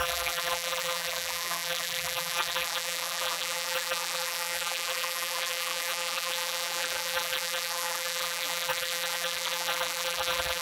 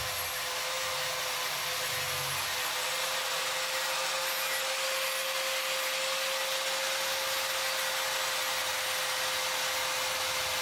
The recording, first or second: second